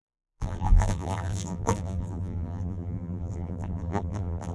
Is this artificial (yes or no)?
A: yes